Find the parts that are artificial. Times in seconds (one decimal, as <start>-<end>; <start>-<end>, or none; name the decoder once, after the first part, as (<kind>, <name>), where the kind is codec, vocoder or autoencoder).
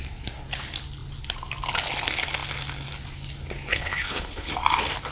3.7-4.5 (codec, HILCodec)